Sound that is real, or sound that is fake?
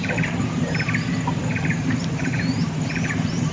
fake